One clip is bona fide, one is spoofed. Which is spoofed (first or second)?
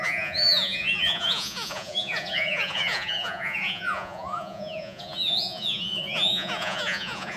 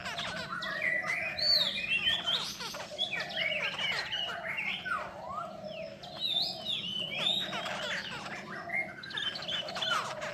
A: first